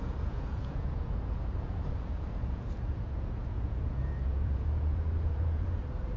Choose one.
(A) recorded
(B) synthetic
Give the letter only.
B